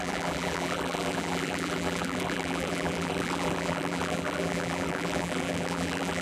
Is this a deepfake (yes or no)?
yes